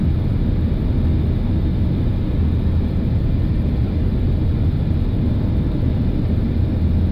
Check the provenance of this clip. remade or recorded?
recorded